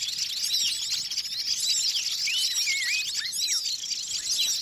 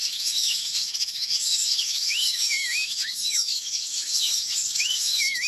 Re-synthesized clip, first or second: second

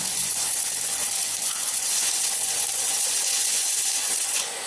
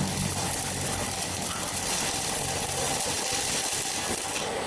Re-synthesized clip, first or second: first